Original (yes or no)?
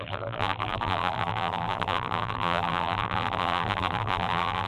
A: no